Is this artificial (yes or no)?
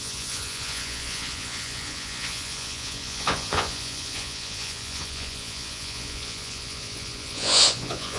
yes